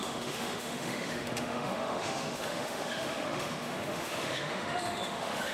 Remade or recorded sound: remade